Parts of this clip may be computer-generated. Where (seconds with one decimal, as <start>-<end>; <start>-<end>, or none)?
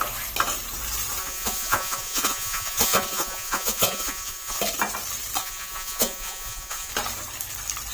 1.2-4.6; 5.4-6.9